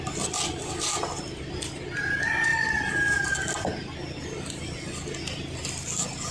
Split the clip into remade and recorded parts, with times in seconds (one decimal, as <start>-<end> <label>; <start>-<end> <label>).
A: 0.0-6.3 recorded